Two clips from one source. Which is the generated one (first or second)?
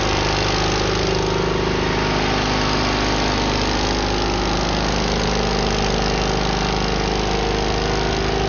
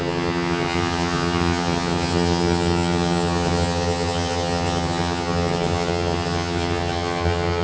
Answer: second